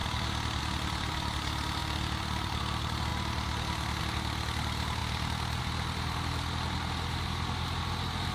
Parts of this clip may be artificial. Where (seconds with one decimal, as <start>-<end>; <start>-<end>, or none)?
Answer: 1.8-2.6